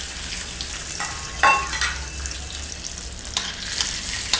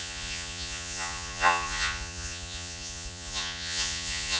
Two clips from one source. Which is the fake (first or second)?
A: second